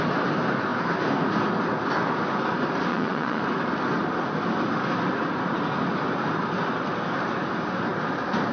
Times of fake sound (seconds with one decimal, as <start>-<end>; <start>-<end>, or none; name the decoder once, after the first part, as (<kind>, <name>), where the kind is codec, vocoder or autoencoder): 2.9-3.4 (vocoder, Vocos)